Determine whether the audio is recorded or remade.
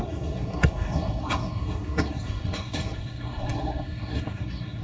remade